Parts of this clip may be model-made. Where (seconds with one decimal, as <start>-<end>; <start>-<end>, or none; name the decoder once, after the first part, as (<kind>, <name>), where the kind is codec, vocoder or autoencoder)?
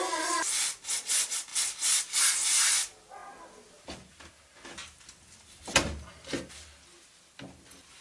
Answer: none